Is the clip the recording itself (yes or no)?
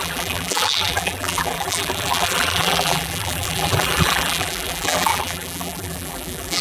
no